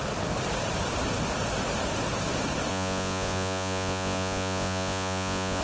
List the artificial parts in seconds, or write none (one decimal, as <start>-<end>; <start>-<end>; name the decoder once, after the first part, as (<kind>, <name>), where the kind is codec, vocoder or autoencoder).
2.7-5.6 (vocoder, Vocos)